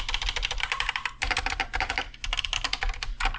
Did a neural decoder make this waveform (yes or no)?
no